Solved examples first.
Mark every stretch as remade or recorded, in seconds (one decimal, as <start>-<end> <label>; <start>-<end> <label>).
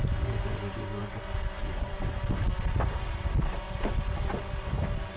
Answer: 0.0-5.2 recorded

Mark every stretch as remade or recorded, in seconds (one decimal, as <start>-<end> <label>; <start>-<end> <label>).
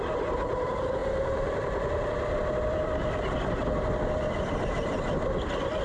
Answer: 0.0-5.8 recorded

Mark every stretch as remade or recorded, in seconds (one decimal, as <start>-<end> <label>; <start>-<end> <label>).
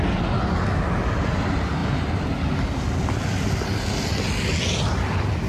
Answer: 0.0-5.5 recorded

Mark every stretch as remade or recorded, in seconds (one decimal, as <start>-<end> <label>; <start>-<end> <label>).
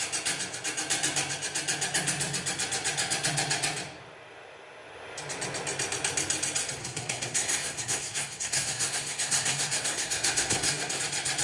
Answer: 0.0-6.8 recorded; 6.8-11.0 remade; 11.0-11.4 recorded